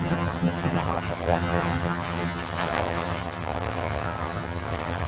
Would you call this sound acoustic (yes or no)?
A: no